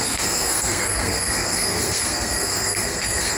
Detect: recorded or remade remade